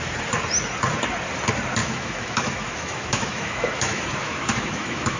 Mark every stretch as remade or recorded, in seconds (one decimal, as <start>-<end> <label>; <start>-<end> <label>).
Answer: 0.0-1.8 recorded; 1.8-5.2 remade